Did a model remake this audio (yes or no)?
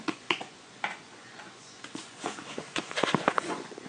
yes